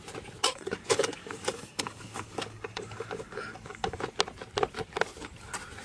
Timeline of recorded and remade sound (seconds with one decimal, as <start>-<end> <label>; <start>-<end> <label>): 0.0-0.5 recorded; 0.5-4.0 remade; 4.0-5.8 recorded